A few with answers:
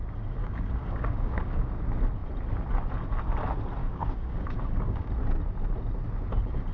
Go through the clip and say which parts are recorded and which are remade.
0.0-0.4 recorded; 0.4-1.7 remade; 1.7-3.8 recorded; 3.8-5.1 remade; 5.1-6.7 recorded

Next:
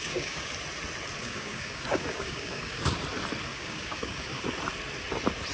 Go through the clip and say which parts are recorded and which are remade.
0.0-0.5 remade; 0.5-1.2 recorded; 1.2-2.9 remade; 2.9-3.5 recorded; 3.5-4.4 remade; 4.4-5.5 recorded

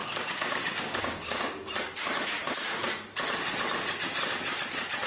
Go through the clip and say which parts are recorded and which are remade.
0.0-1.7 remade; 1.7-5.1 recorded

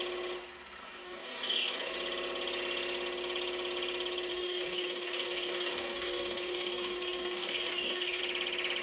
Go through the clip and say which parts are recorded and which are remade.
0.0-0.8 recorded; 0.8-1.9 remade; 1.9-4.3 recorded; 4.3-8.2 remade; 8.2-8.8 recorded

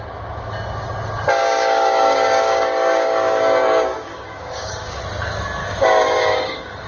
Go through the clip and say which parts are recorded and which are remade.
0.0-1.4 recorded; 1.4-5.0 remade; 5.0-5.6 recorded; 5.6-6.9 remade

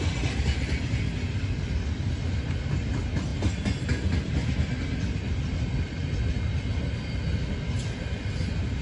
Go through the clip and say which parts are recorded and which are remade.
0.0-8.8 recorded

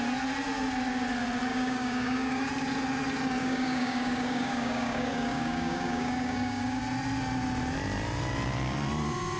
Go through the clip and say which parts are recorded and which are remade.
0.0-1.5 recorded; 1.5-2.5 remade; 2.5-3.4 recorded; 3.4-6.8 remade; 6.8-9.4 recorded